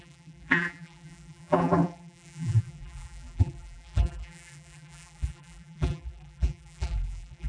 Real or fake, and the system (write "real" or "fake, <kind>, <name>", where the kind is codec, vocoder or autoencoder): fake, vocoder, BigVGAN v2